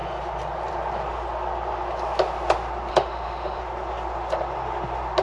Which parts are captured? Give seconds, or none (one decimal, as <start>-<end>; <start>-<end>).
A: 0.0-2.9; 3.6-5.2